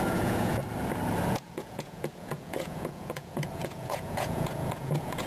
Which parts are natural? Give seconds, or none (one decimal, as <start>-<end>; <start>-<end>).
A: 0.6-1.3